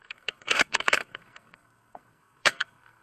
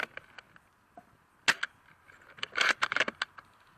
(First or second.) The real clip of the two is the second